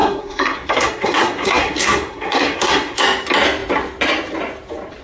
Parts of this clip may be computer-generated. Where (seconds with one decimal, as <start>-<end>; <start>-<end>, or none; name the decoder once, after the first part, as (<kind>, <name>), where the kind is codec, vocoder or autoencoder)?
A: 0.0-3.0 (codec, SNAC)